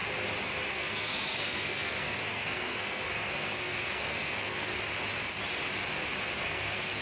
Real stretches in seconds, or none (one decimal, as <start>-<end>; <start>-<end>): 0.0-0.7; 4.7-6.4